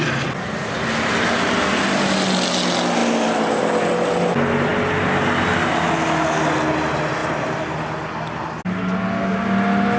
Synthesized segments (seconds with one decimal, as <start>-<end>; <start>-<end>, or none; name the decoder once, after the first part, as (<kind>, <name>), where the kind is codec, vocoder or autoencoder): none